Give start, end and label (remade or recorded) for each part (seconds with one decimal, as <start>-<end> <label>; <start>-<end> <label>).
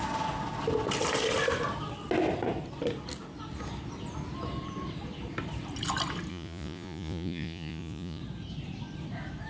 0.0-6.3 recorded; 6.3-8.2 remade; 8.2-9.5 recorded